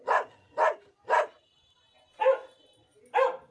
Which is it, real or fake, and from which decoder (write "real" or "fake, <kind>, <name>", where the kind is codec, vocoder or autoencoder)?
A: real